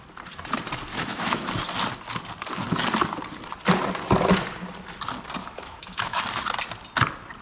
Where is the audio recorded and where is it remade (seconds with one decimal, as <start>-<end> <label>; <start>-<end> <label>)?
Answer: 0.0-0.9 recorded; 0.9-1.5 remade; 1.5-5.4 recorded; 5.4-6.2 remade; 6.2-7.4 recorded